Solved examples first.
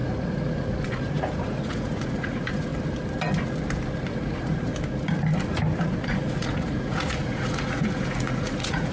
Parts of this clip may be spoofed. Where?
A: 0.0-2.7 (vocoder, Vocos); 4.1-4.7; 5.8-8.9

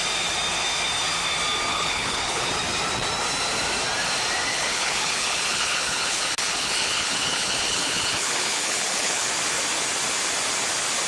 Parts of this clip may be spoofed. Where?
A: 1.7-2.5 (codec, HILCodec); 4.5-9.3

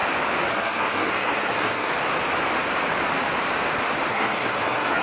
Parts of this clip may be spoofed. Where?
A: 0.5-1.9 (codec, SNAC); 4.1-5.0

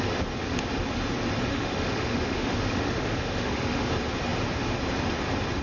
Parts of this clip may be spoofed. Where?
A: 1.5-3.9 (autoencoder, DAC-VAE)

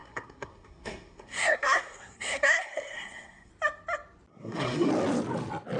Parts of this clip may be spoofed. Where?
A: 0.0-3.5 (codec, SNAC); 4.3-4.9

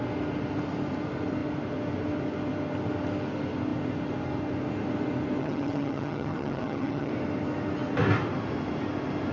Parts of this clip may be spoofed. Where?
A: 5.4-7.1 (vocoder, HiFi-GAN)

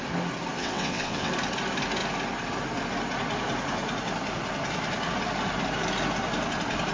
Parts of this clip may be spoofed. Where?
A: 0.5-1.3 (vocoder, WaveNeXt)